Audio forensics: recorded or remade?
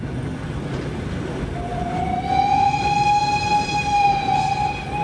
recorded